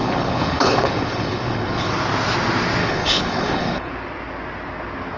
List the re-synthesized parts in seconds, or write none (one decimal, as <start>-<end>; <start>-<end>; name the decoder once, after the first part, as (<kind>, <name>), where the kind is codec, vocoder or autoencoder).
0.0-1.9 (codec, HILCodec); 2.8-3.9